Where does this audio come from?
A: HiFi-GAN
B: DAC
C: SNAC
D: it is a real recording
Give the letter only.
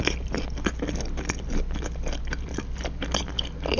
D